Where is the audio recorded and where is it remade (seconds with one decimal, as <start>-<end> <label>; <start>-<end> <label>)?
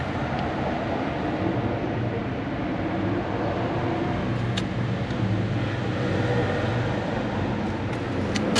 0.0-8.6 recorded